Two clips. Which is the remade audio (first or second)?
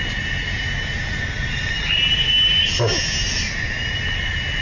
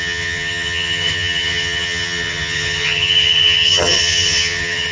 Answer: second